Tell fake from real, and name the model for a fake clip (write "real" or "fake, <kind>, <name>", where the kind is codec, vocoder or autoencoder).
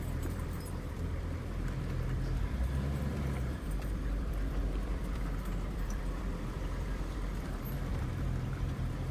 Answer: fake, vocoder, BigVGAN v2